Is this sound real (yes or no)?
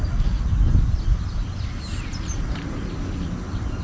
yes